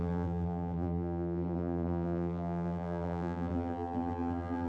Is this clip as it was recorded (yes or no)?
no